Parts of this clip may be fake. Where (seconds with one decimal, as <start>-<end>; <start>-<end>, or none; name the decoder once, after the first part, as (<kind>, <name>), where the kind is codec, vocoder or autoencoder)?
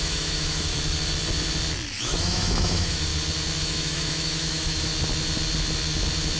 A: 0.0-0.7 (autoencoder, DAC-VAE); 2.0-3.1; 3.6-4.9